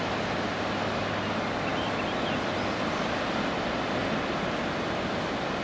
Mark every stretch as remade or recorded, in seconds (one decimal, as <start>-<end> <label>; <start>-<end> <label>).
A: 0.0-5.6 recorded